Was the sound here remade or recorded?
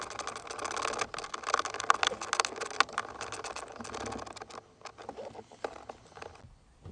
recorded